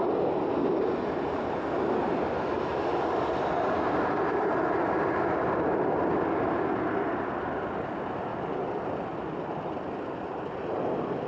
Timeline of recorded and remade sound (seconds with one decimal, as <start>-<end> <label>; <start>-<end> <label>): 0.0-11.3 recorded